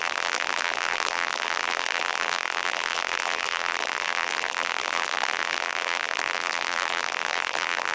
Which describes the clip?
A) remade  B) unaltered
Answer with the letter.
A